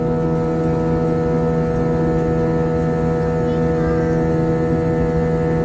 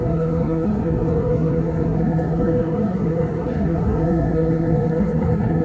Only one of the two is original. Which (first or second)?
first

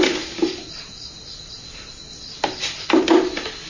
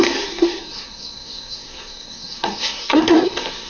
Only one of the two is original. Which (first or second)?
first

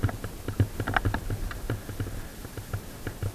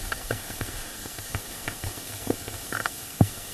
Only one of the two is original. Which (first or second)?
first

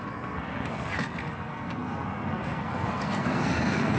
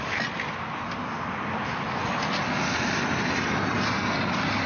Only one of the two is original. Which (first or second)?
second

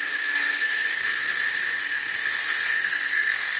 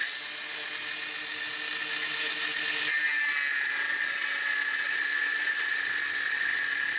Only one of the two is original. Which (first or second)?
second